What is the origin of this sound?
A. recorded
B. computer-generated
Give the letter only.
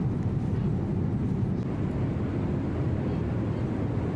A